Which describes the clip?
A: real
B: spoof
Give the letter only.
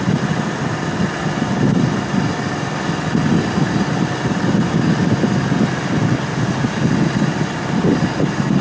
A